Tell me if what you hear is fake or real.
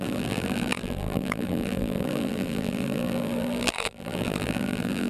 fake